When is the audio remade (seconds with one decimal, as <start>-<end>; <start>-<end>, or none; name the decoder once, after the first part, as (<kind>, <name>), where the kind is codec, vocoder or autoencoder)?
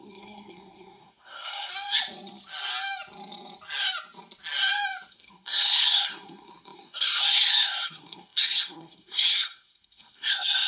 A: 0.0-1.7 (codec, SNAC); 5.1-10.7